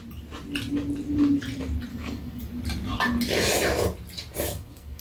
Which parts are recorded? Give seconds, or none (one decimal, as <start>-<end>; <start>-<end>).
0.0-1.9; 2.4-4.5